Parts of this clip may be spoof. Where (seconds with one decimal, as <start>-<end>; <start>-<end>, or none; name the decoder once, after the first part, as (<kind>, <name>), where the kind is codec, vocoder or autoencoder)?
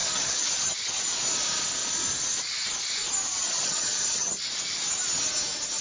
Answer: 0.0-1.0 (vocoder, HiFi-GAN); 3.3-4.4